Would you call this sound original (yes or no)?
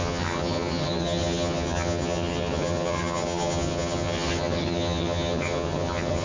no